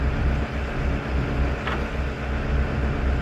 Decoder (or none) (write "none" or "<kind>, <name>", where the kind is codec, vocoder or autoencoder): none